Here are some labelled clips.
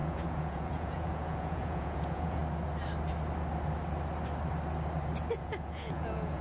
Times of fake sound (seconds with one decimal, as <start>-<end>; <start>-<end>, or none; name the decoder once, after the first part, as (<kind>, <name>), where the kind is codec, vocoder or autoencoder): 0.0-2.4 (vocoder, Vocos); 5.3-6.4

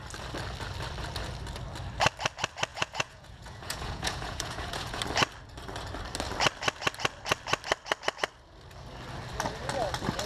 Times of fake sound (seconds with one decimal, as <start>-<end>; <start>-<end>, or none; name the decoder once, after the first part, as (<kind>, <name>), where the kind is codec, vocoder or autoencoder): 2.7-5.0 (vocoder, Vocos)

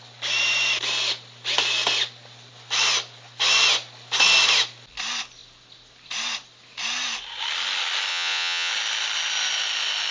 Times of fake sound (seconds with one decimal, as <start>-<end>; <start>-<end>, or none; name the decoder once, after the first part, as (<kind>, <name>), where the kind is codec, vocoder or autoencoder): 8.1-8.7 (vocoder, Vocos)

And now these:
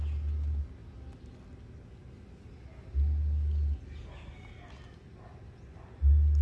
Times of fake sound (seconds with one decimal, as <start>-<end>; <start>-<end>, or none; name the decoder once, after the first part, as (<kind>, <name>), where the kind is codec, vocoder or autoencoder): none

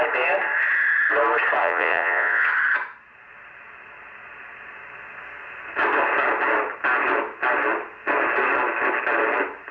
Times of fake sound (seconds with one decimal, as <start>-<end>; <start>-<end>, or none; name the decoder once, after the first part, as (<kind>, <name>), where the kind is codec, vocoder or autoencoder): 1.6-2.5 (vocoder, Vocos)